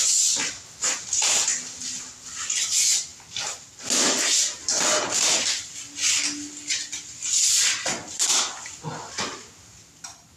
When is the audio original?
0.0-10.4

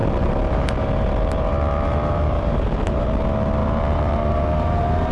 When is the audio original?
3.1-3.6

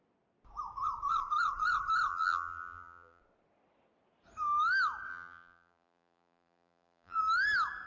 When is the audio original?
0.0-2.1; 3.2-5.1; 7.2-7.9

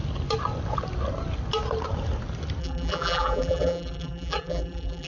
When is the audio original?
0.0-2.6

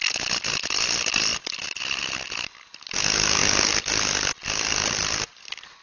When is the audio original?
0.0-1.3; 2.0-5.8

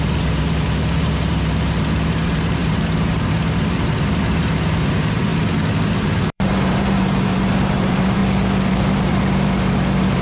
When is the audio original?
5.3-6.0; 8.2-8.7